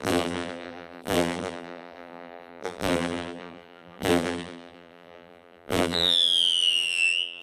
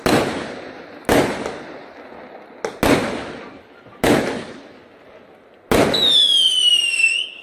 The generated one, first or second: first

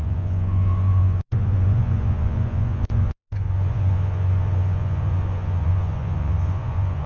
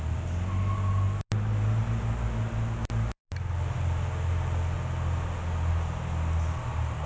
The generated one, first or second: first